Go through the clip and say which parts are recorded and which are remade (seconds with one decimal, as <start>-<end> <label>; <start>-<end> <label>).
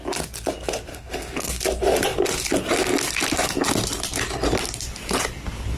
0.0-0.9 recorded; 0.9-1.6 remade; 1.6-5.8 recorded